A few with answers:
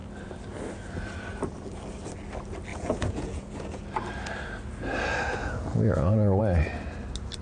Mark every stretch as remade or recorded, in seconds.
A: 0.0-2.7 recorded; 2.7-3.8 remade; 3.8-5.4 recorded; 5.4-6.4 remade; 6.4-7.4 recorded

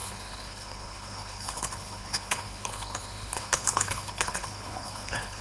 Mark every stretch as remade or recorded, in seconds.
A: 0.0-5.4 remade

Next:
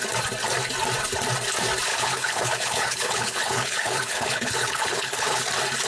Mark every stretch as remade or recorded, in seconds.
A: 0.0-1.9 recorded; 1.9-5.4 remade; 5.4-5.9 recorded